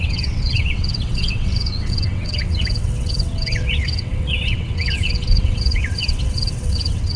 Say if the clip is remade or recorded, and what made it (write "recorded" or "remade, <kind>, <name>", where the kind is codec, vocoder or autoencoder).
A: remade, vocoder, WaveNeXt